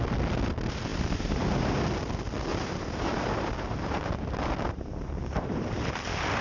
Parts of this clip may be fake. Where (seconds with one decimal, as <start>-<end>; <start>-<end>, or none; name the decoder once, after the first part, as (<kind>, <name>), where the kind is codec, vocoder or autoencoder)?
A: 0.9-1.9 (vocoder, BigVGAN v2); 2.5-6.0